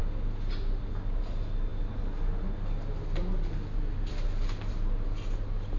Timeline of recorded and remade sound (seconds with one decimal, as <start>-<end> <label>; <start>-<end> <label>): 0.0-5.8 recorded

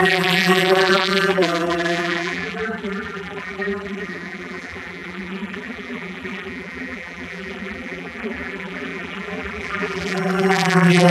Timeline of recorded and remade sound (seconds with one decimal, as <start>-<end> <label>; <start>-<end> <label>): 0.0-11.1 remade

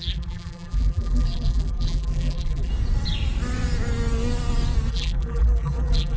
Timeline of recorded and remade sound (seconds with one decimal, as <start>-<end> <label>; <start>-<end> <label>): 0.0-2.7 remade; 2.7-4.9 recorded; 4.9-6.2 remade

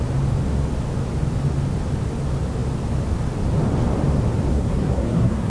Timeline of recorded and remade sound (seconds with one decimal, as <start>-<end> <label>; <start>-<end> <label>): 0.0-4.5 recorded; 4.5-5.5 remade

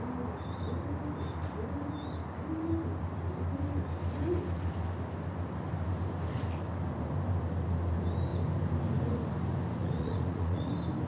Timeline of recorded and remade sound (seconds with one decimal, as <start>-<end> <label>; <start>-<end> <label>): 0.0-9.8 recorded; 9.8-10.7 remade; 10.7-11.1 recorded

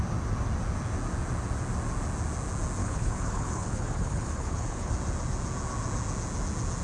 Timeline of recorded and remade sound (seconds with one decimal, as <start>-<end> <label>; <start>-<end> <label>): 0.0-2.8 recorded; 2.8-4.9 remade; 4.9-6.8 recorded